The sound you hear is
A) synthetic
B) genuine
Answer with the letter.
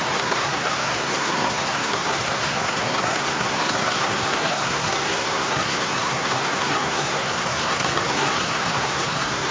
A